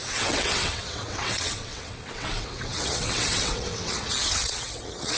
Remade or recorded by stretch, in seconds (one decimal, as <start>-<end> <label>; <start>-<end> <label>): 0.0-5.2 remade